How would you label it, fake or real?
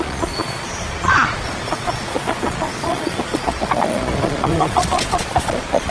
fake